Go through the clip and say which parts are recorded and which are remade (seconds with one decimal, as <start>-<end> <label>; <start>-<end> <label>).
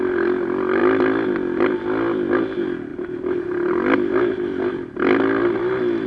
0.0-6.1 recorded